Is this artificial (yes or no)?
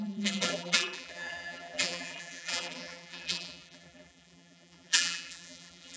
yes